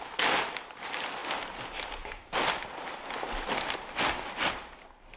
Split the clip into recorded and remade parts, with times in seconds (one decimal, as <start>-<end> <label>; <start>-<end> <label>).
0.0-5.2 recorded